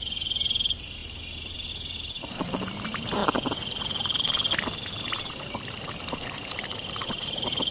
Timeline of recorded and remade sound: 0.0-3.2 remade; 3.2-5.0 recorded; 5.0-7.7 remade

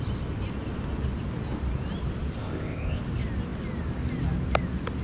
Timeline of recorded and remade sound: 0.0-2.4 recorded; 2.4-3.0 remade; 3.0-5.0 recorded

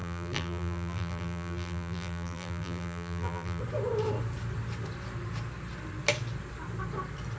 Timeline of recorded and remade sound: 0.0-3.6 remade; 3.6-7.4 recorded

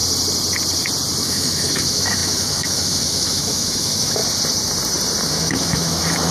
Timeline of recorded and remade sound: 0.0-1.2 recorded; 1.2-4.2 remade; 4.2-5.3 recorded; 5.3-6.3 remade

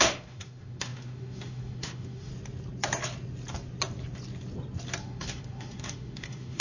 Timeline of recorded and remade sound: 0.0-2.3 remade; 2.3-5.0 recorded; 5.0-6.6 remade

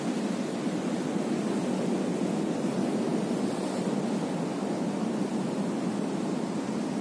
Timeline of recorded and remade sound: 0.0-7.0 recorded

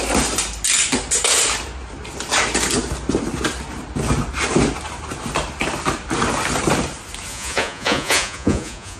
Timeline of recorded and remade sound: 0.0-7.3 recorded; 7.3-9.0 remade